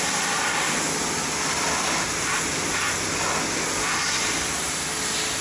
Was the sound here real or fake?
real